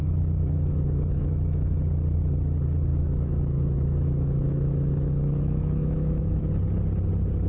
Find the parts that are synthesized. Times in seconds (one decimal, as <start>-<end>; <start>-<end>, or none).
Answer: 0.0-1.8; 2.9-6.5